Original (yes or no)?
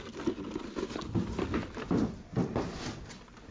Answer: yes